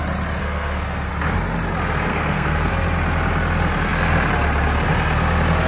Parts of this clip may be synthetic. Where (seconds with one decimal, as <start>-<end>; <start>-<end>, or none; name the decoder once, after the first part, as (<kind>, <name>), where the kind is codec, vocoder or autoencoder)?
0.4-1.1 (codec, SNAC); 2.1-2.7